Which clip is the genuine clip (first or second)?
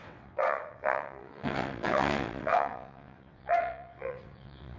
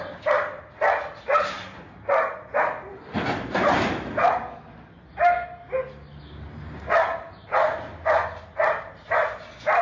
second